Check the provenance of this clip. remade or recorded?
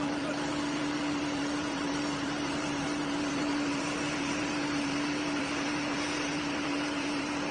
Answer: remade